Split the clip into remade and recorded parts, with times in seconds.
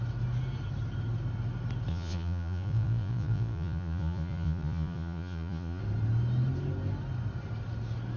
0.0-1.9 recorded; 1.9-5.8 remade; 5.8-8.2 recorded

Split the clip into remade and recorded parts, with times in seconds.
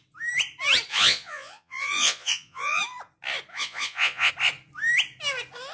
0.0-0.9 recorded; 0.9-2.8 remade; 2.8-3.5 recorded; 3.5-4.3 remade; 4.3-5.7 recorded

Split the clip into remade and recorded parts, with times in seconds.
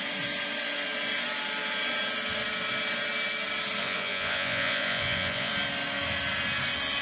0.0-3.8 recorded; 3.8-5.5 remade; 5.5-7.0 recorded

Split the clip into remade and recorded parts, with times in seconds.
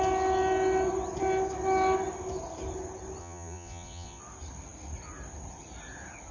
0.0-3.2 recorded; 3.2-4.2 remade; 4.2-6.3 recorded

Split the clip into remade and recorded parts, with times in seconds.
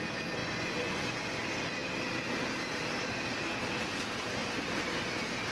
0.0-0.4 recorded; 0.4-1.4 remade; 1.4-5.5 recorded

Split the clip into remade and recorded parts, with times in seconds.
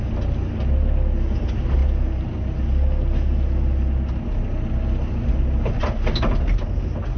0.0-7.2 recorded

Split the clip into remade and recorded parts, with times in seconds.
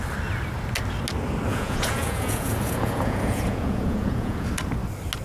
0.0-1.5 recorded; 1.5-4.5 remade; 4.5-5.2 recorded